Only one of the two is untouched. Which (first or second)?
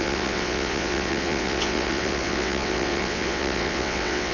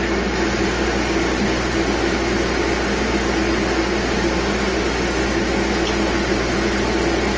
second